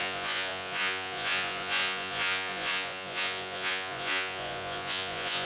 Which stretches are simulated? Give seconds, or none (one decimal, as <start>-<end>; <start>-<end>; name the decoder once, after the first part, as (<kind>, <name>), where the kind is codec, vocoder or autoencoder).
0.0-5.4 (vocoder, Vocos)